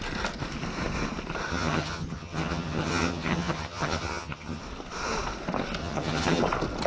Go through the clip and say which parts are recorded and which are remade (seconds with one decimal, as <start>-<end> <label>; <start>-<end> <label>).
0.0-1.5 recorded; 1.5-4.6 remade; 4.6-5.8 recorded; 5.8-6.4 remade; 6.4-6.9 recorded